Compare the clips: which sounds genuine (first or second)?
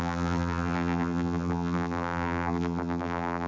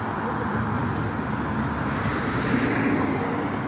second